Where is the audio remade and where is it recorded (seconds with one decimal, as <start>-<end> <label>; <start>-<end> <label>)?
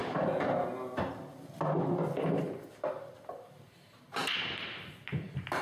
0.0-3.4 recorded; 3.4-4.2 remade; 4.2-5.1 recorded; 5.1-5.6 remade